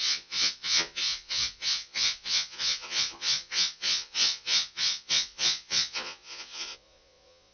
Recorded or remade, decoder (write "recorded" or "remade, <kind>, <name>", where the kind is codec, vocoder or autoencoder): remade, vocoder, Vocos